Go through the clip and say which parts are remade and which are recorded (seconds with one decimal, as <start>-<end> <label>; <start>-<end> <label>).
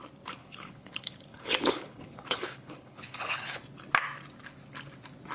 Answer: 0.0-0.4 recorded; 0.4-3.6 remade; 3.6-5.3 recorded